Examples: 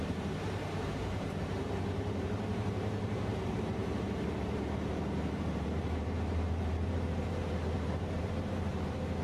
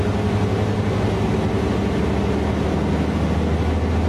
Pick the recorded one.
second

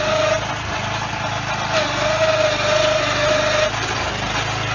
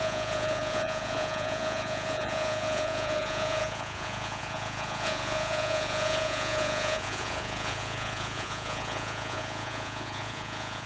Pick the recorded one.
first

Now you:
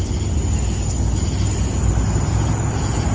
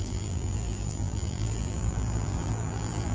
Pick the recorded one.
first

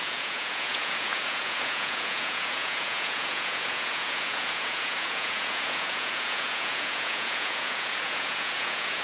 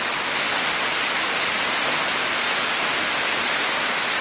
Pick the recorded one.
second